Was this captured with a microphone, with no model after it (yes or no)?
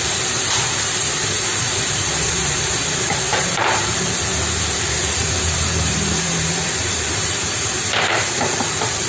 no